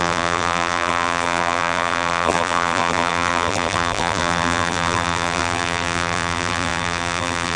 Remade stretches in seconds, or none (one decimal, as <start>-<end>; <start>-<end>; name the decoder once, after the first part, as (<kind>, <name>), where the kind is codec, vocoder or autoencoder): 0.0-7.6 (vocoder, BigVGAN v2)